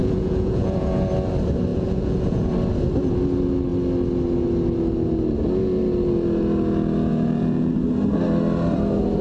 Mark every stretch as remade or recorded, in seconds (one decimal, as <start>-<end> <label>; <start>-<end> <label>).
0.0-1.1 remade; 1.1-1.7 recorded; 1.7-2.5 remade; 2.5-7.1 recorded; 7.1-7.7 remade; 7.7-9.2 recorded